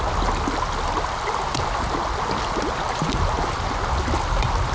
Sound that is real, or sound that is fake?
real